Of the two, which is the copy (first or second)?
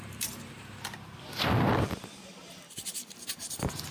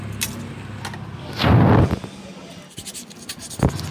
first